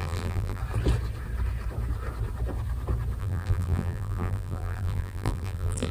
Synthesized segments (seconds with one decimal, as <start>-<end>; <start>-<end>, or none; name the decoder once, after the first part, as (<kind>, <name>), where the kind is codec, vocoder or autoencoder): 0.0-0.6 (vocoder, BigVGAN v2); 3.2-5.9